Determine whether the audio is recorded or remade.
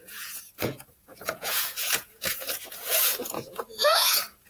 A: remade